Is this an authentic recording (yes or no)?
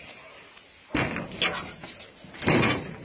yes